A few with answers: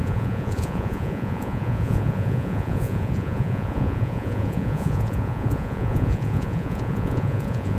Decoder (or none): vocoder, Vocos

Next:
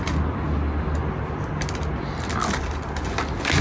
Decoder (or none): none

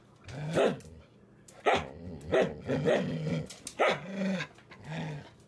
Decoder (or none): none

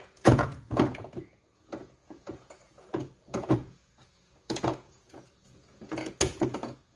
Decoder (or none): vocoder, Vocos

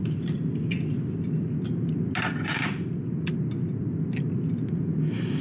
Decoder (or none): none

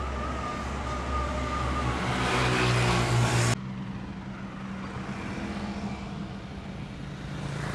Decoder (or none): none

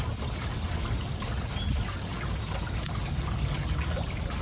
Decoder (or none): none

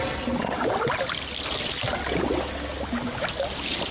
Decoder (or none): none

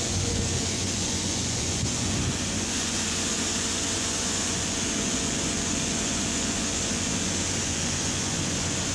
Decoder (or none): vocoder, Vocos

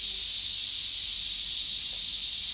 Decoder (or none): none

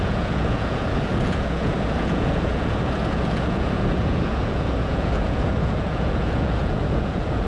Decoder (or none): vocoder, Vocos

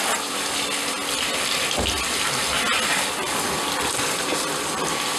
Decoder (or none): none